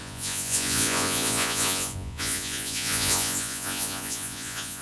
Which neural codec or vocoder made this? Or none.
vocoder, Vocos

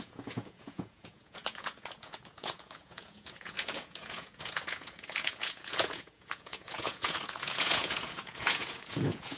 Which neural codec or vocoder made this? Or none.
vocoder, Vocos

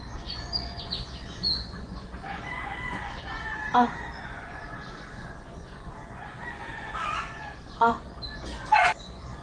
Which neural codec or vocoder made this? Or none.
vocoder, Vocos